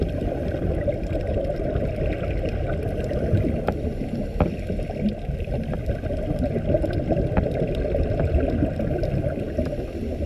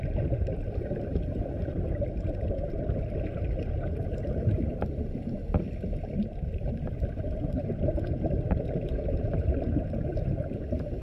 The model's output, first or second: second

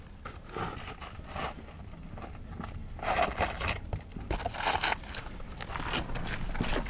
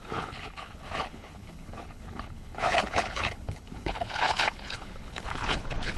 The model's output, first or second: second